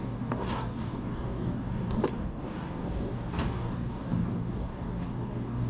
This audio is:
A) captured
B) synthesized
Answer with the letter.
B